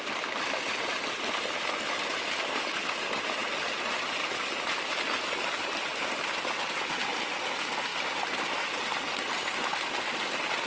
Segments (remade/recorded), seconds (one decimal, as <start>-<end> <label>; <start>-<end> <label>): 0.0-10.7 recorded